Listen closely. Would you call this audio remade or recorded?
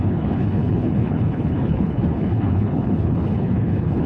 remade